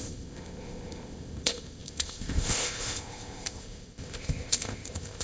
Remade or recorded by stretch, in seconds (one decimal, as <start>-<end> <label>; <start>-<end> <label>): 0.0-5.2 remade